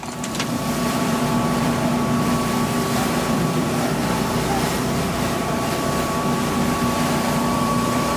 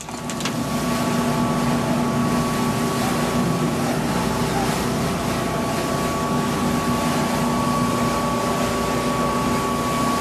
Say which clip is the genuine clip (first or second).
second